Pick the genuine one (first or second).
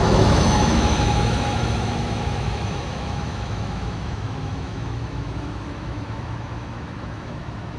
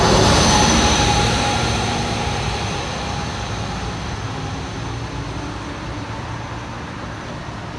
second